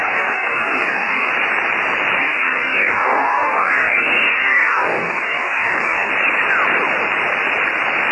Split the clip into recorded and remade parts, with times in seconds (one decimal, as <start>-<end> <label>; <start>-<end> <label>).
0.0-1.3 remade; 1.3-2.2 recorded; 2.2-6.1 remade; 6.1-8.1 recorded

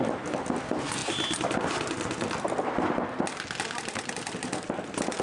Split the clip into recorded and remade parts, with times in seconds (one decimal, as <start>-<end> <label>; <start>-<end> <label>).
0.0-5.2 recorded

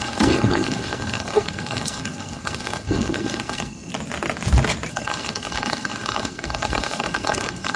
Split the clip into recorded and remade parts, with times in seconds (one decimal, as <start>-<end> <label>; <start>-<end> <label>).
0.0-3.9 remade; 3.9-4.9 recorded; 4.9-7.8 remade

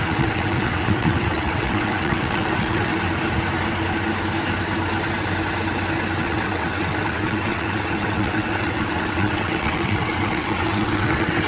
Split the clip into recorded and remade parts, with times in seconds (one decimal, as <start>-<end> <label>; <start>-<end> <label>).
0.0-2.9 remade; 2.9-6.2 recorded; 6.2-11.5 remade

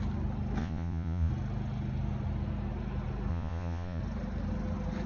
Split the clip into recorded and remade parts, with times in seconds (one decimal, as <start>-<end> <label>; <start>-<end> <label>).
0.0-0.6 recorded; 0.6-1.3 remade; 1.3-3.3 recorded; 3.3-4.0 remade; 4.0-5.1 recorded

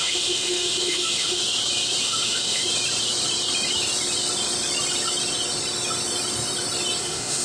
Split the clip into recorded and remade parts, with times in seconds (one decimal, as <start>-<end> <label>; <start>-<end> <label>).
0.0-1.4 remade; 1.4-2.0 recorded; 2.0-2.6 remade; 2.6-7.0 recorded; 7.0-7.4 remade

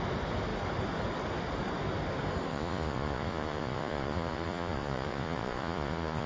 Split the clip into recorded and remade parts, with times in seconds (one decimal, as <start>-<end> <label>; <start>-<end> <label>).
0.0-2.5 recorded; 2.5-6.3 remade